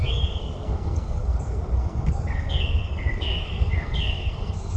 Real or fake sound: fake